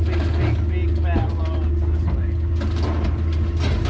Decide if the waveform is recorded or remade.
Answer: recorded